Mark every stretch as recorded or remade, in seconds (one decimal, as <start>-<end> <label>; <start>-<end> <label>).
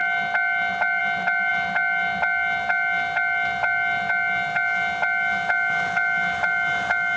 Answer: 0.0-7.2 recorded